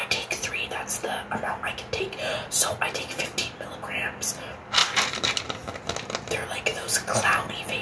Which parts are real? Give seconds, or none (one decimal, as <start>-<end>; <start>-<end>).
0.5-4.8; 5.4-6.7